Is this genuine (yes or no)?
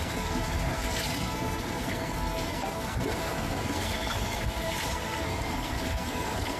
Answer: no